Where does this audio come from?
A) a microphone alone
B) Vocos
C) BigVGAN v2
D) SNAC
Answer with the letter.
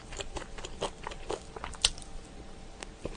A